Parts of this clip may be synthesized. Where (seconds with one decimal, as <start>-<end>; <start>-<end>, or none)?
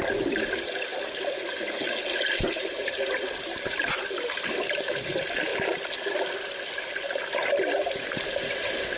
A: none